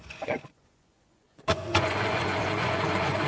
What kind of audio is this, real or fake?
fake